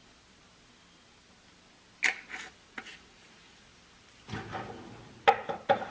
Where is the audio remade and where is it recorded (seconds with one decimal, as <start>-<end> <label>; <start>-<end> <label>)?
0.0-2.6 recorded; 2.6-3.7 remade; 3.7-5.9 recorded